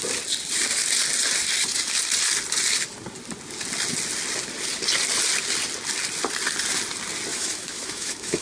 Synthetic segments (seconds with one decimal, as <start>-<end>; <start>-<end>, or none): 7.3-8.4